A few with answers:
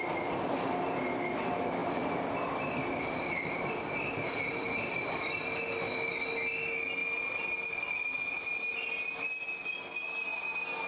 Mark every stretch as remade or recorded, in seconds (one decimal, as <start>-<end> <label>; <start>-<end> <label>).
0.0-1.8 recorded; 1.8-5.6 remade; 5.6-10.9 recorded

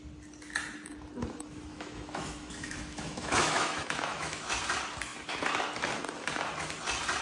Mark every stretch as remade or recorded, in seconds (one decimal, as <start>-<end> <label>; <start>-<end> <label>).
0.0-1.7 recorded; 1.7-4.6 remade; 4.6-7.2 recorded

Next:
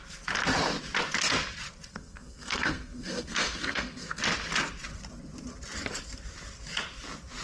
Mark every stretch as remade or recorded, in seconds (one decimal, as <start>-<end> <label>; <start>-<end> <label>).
0.0-1.9 recorded; 1.9-4.2 remade; 4.2-7.4 recorded